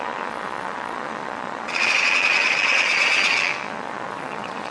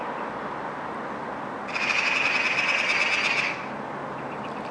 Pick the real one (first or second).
second